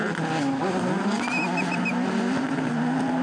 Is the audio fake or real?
real